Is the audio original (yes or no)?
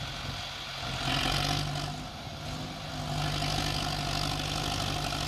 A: yes